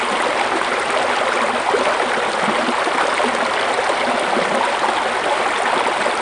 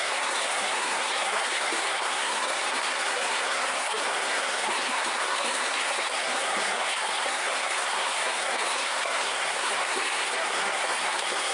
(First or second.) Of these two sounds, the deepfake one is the second